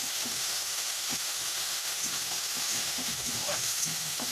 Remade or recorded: remade